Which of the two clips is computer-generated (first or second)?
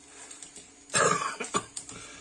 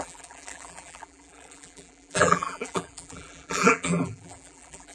second